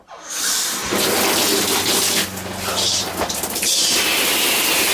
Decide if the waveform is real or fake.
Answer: fake